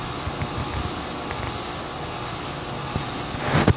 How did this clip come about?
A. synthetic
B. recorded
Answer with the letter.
B